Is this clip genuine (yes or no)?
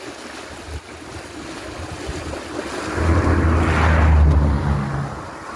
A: yes